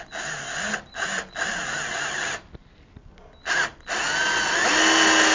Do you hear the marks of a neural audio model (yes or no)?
no